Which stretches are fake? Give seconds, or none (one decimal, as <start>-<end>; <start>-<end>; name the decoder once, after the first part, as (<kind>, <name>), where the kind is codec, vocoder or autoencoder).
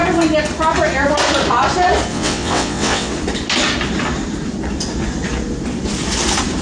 2.1-3.1 (vocoder, WaveNeXt)